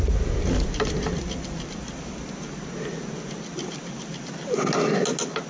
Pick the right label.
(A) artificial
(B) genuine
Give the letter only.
B